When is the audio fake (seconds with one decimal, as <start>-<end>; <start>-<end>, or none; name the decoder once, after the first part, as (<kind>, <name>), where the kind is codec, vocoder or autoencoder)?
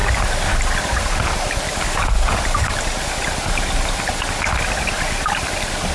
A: none